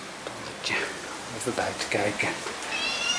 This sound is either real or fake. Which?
real